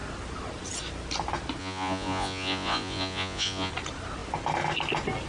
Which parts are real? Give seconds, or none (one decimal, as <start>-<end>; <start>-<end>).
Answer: 0.0-1.6; 3.7-5.3